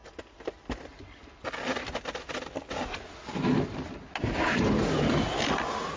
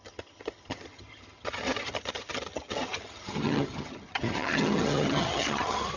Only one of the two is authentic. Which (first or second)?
first